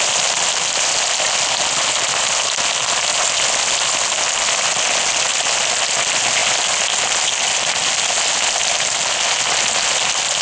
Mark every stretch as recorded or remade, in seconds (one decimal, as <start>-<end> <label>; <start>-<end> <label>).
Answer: 0.0-10.4 recorded